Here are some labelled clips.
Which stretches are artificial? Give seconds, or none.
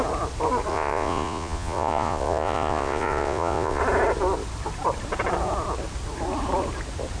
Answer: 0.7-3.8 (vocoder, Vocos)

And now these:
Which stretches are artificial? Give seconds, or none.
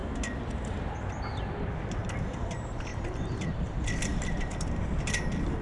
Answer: 2.9-3.7 (vocoder, BigVGAN v2)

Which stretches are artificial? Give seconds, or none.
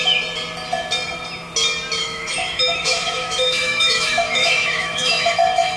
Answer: 2.0-5.8 (autoencoder, DAC-VAE)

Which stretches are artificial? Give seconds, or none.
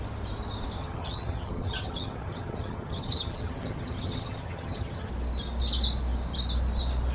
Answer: 0.8-5.1 (vocoder, HiFi-GAN)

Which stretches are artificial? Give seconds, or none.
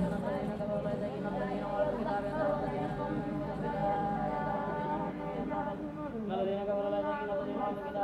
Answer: 0.0-1.8 (vocoder, BigVGAN v2); 2.4-6.5; 7.6-8.0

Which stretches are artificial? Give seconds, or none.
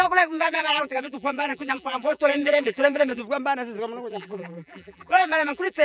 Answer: 0.0-3.2 (vocoder, BigVGAN v2); 4.1-5.8